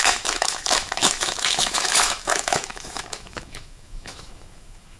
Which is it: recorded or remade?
remade